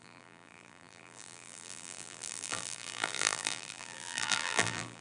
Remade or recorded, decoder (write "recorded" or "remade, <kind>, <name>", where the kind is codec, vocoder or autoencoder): remade, vocoder, BigVGAN v2